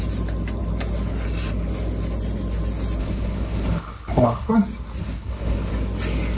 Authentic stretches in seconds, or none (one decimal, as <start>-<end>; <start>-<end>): 0.0-3.0; 4.5-5.0; 5.7-6.4